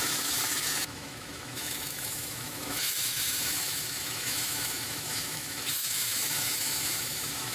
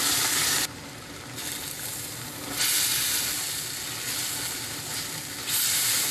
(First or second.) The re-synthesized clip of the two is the first